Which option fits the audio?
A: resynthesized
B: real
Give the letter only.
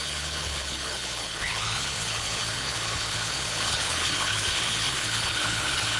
A